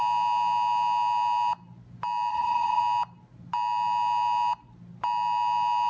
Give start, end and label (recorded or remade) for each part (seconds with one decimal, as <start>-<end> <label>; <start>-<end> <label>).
0.0-2.3 recorded; 2.3-2.8 remade; 2.8-5.9 recorded